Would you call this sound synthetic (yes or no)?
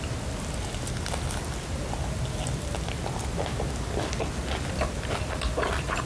no